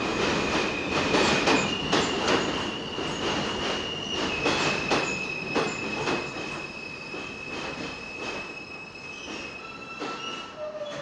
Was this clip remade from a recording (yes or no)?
no